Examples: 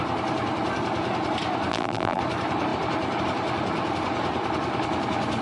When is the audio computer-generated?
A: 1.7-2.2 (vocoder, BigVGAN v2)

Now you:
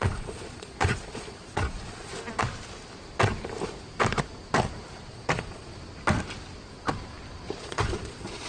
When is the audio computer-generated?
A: 0.0-2.1 (vocoder, Vocos); 5.1-5.7; 7.6-8.5